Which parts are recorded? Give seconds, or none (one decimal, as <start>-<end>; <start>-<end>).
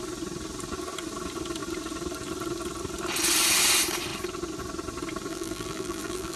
0.0-5.3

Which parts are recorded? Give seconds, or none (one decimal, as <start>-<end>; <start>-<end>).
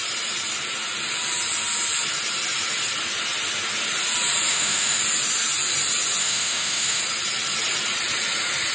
0.0-4.5; 5.0-6.2; 7.0-8.7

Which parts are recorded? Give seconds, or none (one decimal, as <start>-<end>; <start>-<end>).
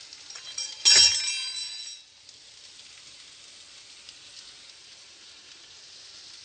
0.0-6.4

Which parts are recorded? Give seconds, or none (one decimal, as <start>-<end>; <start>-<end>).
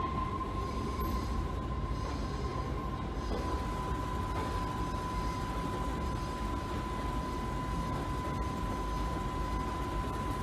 0.0-10.4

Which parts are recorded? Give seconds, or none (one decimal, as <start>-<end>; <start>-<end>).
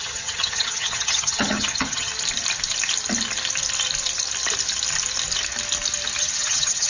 2.1-6.2